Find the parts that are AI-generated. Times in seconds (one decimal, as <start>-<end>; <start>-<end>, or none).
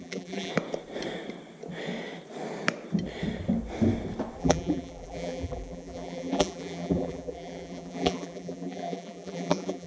0.0-0.5; 4.4-9.9